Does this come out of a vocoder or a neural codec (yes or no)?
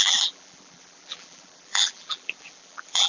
yes